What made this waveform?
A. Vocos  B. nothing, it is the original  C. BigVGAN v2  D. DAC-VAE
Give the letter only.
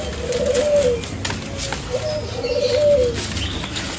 B